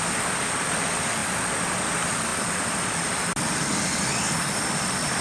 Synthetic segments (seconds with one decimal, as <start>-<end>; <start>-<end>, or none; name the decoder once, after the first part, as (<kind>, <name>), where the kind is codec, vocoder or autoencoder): none